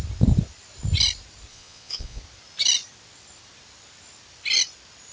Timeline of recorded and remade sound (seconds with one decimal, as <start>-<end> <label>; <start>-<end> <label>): 0.0-1.5 recorded; 1.5-2.2 remade; 2.2-5.1 recorded